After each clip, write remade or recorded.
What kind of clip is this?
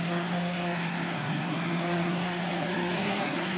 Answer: remade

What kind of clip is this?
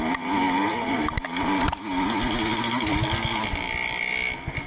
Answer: recorded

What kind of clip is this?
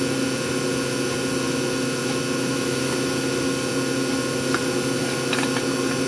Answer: recorded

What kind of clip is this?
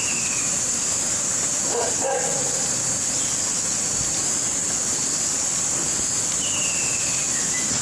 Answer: recorded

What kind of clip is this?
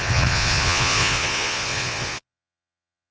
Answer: remade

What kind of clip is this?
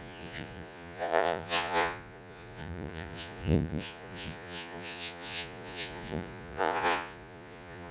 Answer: remade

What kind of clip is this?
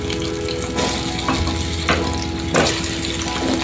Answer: recorded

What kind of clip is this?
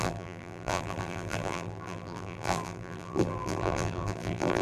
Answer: remade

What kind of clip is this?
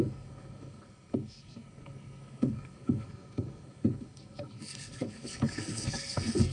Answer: remade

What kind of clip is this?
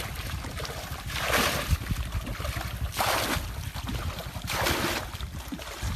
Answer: recorded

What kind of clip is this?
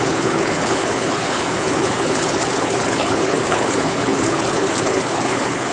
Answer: remade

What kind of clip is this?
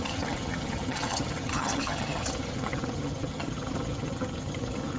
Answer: remade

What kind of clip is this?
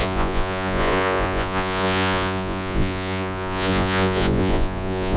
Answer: remade